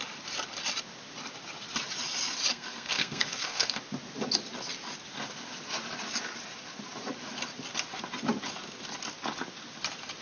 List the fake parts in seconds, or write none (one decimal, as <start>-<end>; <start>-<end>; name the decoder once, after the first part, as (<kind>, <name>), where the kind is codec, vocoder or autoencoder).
2.5-3.8 (codec, SNAC)